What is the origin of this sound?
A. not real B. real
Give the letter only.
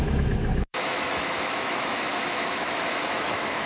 A